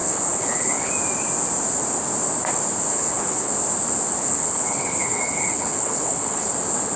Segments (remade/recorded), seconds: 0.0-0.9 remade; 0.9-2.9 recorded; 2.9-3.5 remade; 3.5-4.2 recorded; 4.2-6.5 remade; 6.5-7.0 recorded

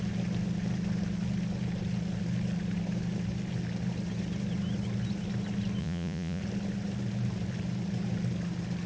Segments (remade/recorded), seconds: 0.0-5.8 recorded; 5.8-6.4 remade; 6.4-8.9 recorded

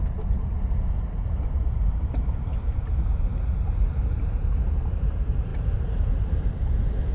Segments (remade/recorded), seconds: 0.0-2.5 remade; 2.5-4.9 recorded; 4.9-7.1 remade

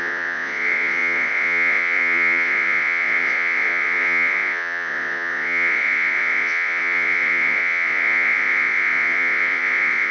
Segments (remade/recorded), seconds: 0.0-10.1 remade

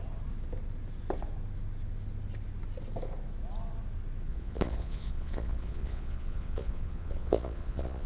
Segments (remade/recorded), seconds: 0.0-4.3 recorded; 4.3-8.1 remade

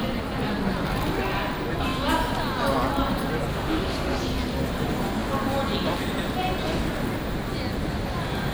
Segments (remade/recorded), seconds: 0.0-3.5 recorded; 3.5-4.2 remade; 4.2-8.5 recorded

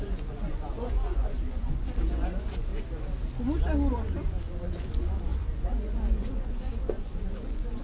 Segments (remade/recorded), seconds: 0.0-2.7 remade; 2.7-3.9 recorded; 3.9-7.8 remade